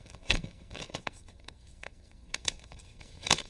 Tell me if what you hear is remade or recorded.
remade